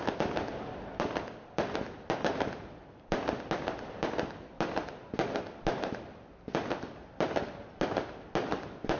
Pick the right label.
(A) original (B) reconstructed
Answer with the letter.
A